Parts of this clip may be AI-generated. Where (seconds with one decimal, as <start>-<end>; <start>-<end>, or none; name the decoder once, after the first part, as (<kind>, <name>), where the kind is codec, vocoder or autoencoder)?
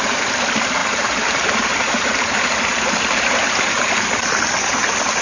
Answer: 0.8-3.9 (vocoder, BigVGAN v2)